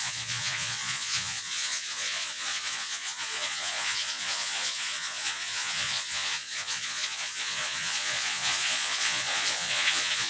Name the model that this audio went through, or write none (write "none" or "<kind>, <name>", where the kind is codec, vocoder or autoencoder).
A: vocoder, Vocos